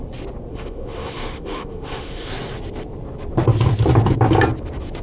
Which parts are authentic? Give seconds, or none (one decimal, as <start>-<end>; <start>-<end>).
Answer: 0.0-0.5; 2.3-5.0